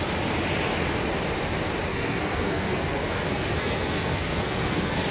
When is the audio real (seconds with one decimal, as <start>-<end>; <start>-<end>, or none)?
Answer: 0.0-1.9